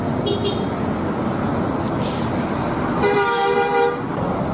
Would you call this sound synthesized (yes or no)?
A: no